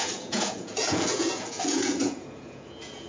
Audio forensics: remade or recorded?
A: remade